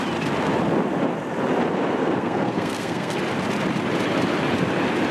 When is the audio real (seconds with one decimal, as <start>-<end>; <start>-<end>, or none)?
0.0-2.0; 3.2-5.1